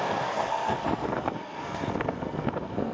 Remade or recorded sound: remade